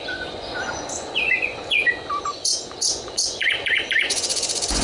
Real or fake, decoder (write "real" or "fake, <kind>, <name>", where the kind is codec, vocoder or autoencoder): fake, vocoder, Vocos